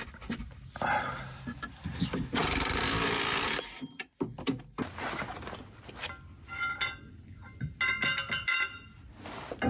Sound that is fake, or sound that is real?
real